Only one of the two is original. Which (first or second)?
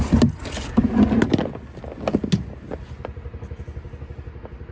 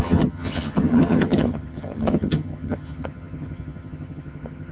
first